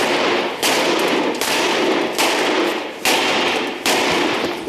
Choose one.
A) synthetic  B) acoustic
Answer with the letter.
B